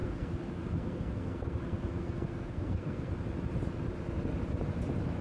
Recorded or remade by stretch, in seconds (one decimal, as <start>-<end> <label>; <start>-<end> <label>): 0.0-3.1 remade; 3.1-5.2 recorded